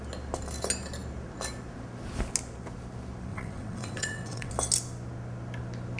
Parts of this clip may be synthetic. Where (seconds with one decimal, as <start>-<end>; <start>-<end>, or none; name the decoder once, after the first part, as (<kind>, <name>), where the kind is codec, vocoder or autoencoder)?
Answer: 3.3-4.5 (vocoder, WaveNeXt)